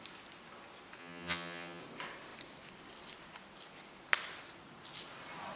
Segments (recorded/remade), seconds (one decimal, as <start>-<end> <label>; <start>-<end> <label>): 0.0-1.0 recorded; 1.0-1.8 remade; 1.8-5.6 recorded